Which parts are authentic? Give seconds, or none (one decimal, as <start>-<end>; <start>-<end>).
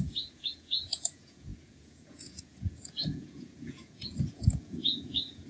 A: none